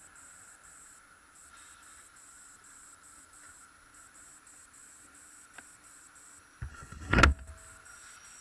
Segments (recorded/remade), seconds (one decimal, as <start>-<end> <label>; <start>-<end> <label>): 0.0-6.7 recorded; 6.7-7.2 remade; 7.2-8.4 recorded